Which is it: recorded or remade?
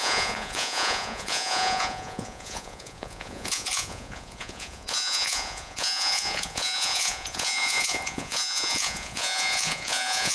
remade